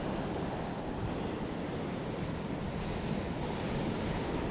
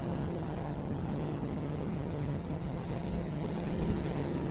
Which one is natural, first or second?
first